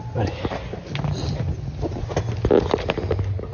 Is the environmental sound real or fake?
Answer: real